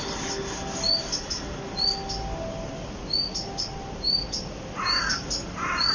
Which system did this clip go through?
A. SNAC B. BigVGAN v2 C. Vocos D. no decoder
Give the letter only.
D